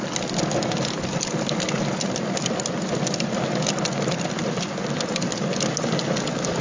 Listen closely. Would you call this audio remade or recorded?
recorded